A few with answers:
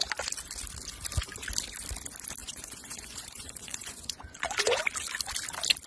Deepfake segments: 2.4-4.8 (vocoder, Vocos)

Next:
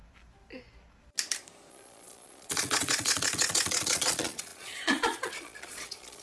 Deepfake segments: 1.7-6.2 (vocoder, Vocos)

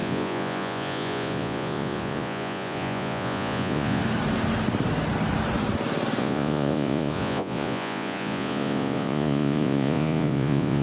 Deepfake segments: 0.0-4.0 (vocoder, Vocos); 6.2-10.8